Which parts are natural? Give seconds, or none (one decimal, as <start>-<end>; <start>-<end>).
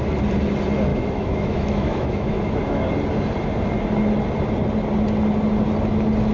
0.0-0.9; 2.9-6.3